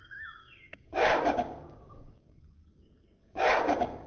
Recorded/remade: remade